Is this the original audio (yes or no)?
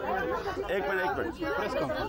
yes